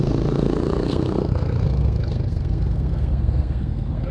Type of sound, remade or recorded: remade